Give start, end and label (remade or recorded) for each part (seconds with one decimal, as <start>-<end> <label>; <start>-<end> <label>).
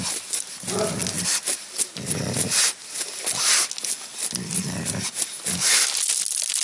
0.0-6.6 recorded